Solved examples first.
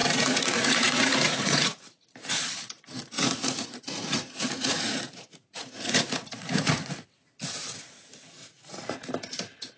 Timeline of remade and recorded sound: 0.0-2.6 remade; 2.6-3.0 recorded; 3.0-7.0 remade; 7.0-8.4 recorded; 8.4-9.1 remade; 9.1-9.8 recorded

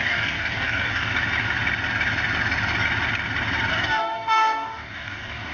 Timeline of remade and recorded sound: 0.0-1.1 remade; 1.1-3.7 recorded; 3.7-5.5 remade